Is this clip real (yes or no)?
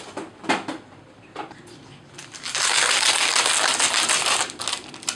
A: yes